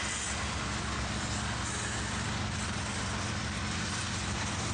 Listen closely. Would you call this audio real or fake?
real